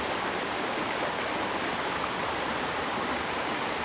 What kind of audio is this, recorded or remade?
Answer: recorded